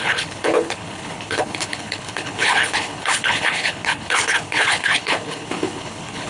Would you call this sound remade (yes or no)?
yes